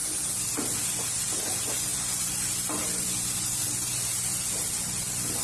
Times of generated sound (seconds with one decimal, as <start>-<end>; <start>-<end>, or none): none